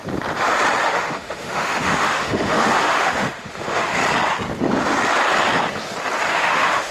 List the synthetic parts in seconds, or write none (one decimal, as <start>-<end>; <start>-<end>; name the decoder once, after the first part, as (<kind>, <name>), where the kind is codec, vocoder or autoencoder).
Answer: 0.8-4.0 (autoencoder, DAC-VAE); 6.3-6.9